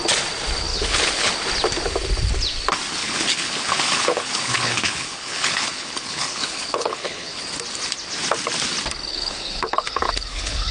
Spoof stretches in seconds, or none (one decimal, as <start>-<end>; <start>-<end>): 0.7-1.3; 3.0-7.4; 9.1-10.7